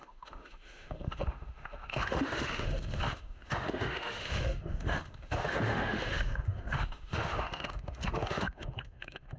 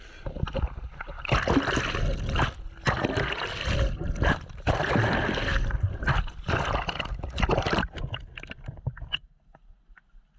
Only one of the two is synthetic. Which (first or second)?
first